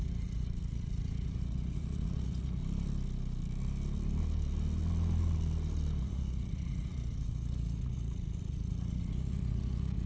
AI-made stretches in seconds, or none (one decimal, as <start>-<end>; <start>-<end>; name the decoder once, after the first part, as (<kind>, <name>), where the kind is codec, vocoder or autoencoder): 0.0-2.6 (vocoder, Vocos); 6.0-10.1